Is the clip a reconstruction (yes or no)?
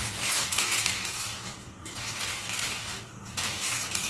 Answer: yes